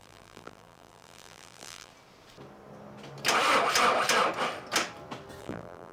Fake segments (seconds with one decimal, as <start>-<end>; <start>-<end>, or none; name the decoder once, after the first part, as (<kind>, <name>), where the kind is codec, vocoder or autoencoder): 0.0-1.9 (vocoder, BigVGAN v2); 5.4-5.9